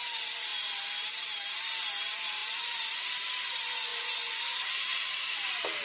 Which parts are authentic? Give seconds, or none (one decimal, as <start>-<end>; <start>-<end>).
0.0-3.9; 4.4-5.8

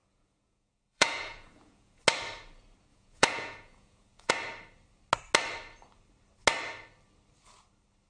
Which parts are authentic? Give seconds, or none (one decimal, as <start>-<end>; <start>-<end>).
2.0-2.9; 4.3-8.1

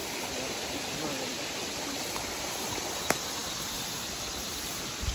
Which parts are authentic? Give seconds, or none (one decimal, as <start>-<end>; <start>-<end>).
2.9-3.4

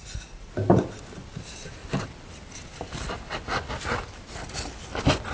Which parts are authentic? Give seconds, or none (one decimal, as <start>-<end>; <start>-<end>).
0.5-5.3